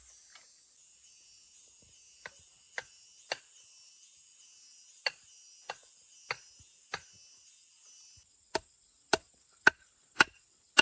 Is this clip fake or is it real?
real